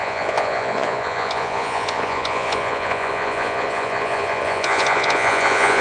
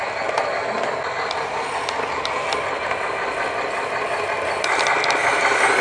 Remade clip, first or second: first